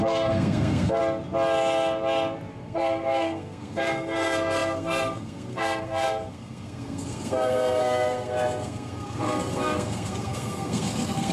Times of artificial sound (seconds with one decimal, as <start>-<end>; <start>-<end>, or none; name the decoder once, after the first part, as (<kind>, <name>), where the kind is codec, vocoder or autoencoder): 0.0-1.0 (codec, SNAC); 2.5-11.3